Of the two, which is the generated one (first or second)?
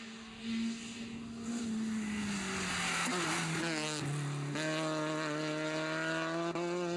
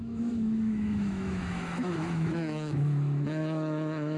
second